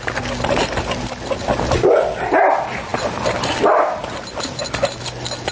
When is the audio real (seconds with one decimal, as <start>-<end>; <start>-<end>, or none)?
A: 0.0-5.5